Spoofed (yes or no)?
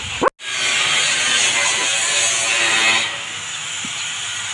no